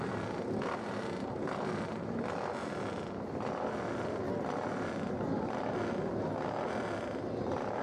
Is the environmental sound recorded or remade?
recorded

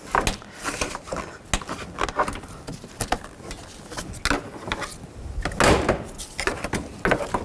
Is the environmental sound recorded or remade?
recorded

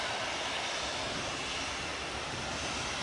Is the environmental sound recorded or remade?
remade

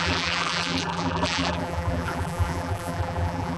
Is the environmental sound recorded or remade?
remade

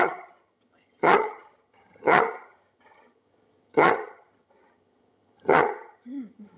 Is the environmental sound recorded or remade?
remade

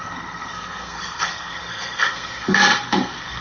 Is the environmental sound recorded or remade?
remade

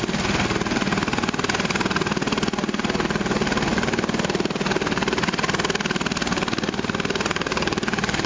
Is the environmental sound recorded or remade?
recorded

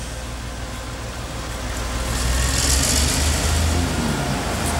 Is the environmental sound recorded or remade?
recorded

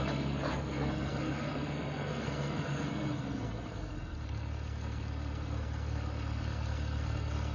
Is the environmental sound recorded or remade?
remade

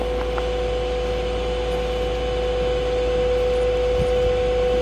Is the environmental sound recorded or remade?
recorded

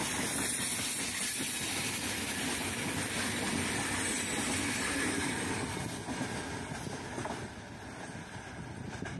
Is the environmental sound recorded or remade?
recorded